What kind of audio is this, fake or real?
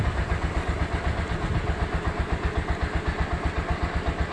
real